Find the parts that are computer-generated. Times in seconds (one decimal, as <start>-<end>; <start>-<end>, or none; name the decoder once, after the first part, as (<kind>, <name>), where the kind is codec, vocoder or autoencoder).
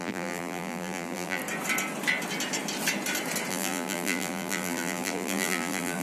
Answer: 0.0-1.4 (vocoder, BigVGAN v2); 3.5-6.0